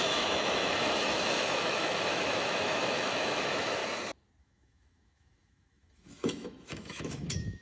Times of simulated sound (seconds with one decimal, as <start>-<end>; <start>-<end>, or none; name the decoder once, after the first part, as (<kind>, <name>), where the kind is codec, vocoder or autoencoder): 0.0-3.8 (autoencoder, DAC-VAE); 4.4-7.6